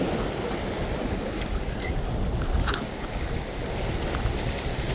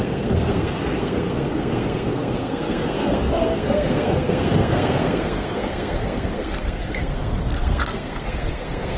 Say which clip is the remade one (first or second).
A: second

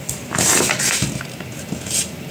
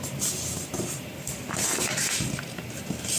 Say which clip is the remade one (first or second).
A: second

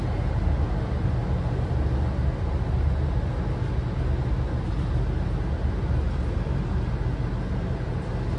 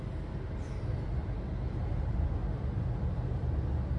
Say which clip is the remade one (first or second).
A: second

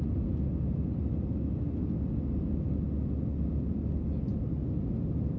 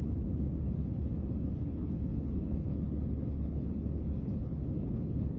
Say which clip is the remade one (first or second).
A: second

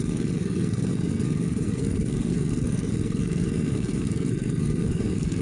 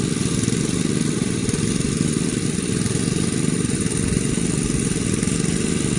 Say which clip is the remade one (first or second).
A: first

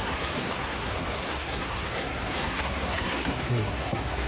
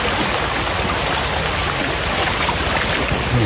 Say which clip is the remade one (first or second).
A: first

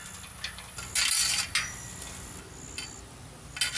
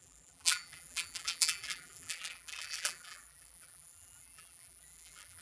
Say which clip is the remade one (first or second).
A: second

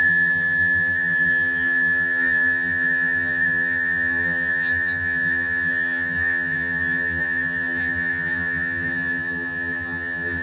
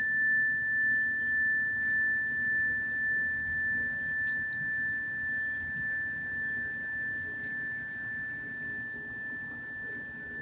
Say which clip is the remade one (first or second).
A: first